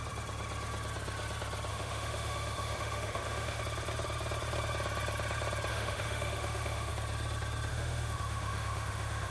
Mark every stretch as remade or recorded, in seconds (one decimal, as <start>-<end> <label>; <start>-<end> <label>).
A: 0.0-1.7 recorded; 1.7-3.6 remade; 3.6-5.7 recorded; 5.7-6.9 remade; 6.9-7.7 recorded; 7.7-9.3 remade